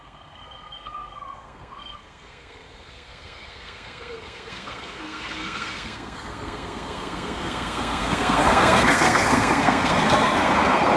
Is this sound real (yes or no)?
no